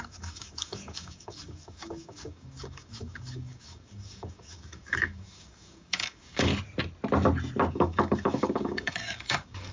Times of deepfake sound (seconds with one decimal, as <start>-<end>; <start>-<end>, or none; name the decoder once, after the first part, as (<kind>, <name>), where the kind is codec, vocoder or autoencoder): 0.0-6.5 (codec, DAC); 7.7-9.7